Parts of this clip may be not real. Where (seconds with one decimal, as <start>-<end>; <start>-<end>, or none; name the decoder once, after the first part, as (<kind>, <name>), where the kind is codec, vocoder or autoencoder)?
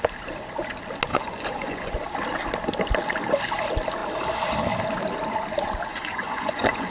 1.1-1.9 (vocoder, Vocos); 5.9-6.9